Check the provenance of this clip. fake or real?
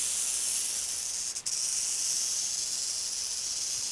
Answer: real